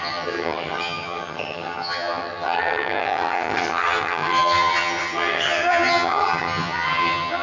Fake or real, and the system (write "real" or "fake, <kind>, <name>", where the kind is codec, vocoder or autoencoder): fake, vocoder, HiFi-GAN